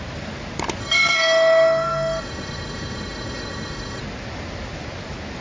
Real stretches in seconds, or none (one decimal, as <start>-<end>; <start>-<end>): 0.0-0.8; 4.0-5.4